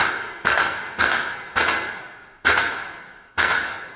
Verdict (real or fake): fake